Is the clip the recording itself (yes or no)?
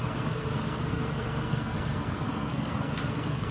no